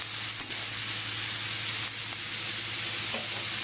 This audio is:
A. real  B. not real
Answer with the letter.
A